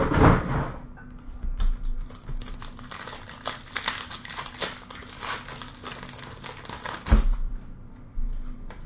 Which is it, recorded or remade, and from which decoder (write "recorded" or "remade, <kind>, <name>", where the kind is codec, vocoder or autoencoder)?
recorded